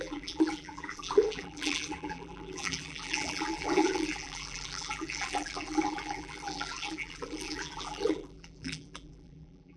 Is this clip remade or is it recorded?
remade